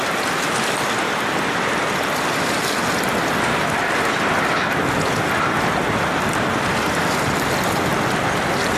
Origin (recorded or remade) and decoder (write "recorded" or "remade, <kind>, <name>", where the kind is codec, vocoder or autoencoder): recorded